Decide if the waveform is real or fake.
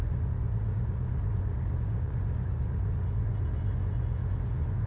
fake